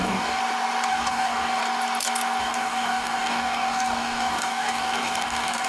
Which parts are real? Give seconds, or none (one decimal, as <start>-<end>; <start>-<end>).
0.4-0.9; 1.6-2.4